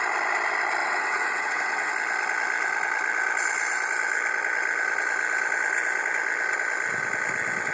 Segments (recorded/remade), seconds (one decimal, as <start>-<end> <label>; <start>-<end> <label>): 0.0-0.8 recorded; 0.8-1.9 remade; 1.9-7.7 recorded